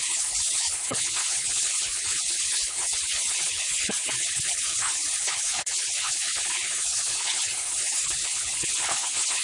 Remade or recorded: remade